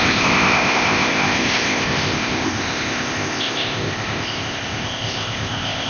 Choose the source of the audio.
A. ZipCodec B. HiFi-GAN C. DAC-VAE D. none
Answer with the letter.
A